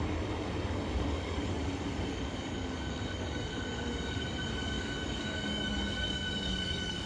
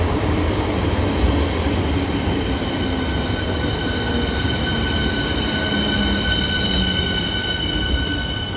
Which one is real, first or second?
second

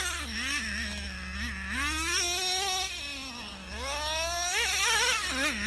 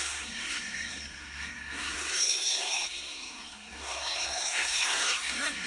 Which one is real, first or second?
first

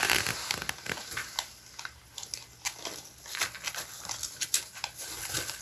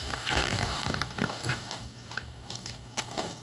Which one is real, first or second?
first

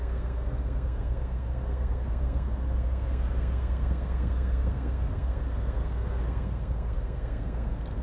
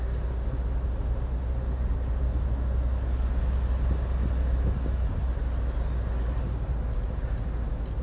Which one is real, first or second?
second